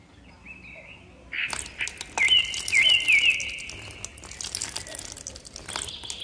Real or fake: real